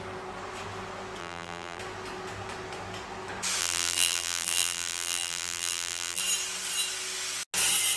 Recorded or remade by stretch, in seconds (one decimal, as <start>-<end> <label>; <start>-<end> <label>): 0.0-1.2 recorded; 1.2-1.8 remade; 1.8-3.6 recorded; 3.6-6.2 remade; 6.2-8.0 recorded